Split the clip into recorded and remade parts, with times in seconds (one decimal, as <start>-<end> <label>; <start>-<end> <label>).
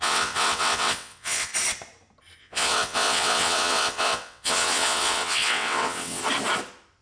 0.0-1.5 remade; 1.5-2.4 recorded; 2.4-6.2 remade; 6.2-7.0 recorded